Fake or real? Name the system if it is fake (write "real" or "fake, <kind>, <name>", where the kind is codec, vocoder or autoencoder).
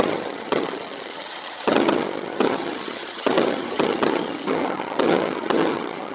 fake, vocoder, HiFi-GAN